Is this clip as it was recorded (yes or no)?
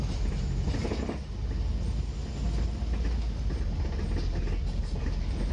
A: yes